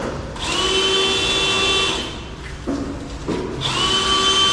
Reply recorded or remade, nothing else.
recorded